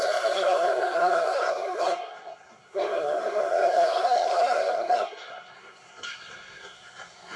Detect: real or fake fake